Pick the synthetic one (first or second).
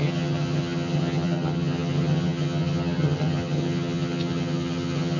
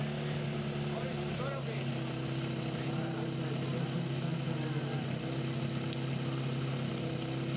first